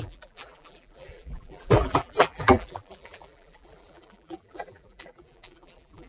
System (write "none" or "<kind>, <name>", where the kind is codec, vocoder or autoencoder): vocoder, BigVGAN v2